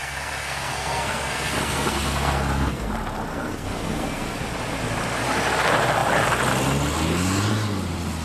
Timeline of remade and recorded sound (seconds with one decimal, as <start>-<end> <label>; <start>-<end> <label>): 0.0-2.9 remade; 2.9-3.3 recorded; 3.3-4.4 remade; 4.4-8.2 recorded